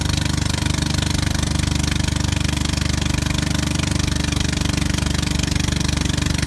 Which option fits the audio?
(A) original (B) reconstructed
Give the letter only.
A